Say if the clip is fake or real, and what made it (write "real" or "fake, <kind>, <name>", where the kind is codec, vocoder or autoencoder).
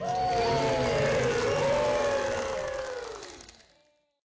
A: real